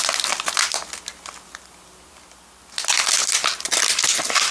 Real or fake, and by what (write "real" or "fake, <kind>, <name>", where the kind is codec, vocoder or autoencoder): real